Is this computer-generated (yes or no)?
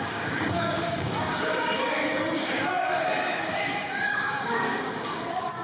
yes